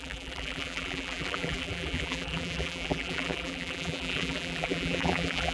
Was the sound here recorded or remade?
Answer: remade